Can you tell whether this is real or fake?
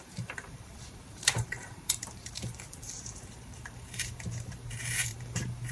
fake